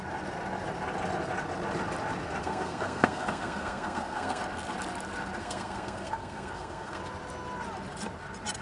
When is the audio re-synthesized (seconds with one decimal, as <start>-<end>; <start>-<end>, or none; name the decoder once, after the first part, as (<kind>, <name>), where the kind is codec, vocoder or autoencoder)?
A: 2.4-4.4 (codec, SNAC); 5.4-7.0